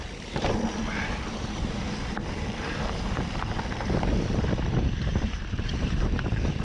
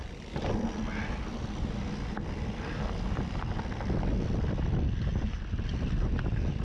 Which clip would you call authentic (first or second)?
second